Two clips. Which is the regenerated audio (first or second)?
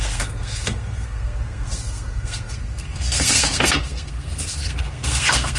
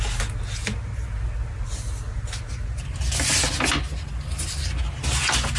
first